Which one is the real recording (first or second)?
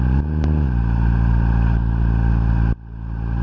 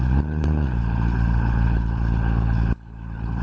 first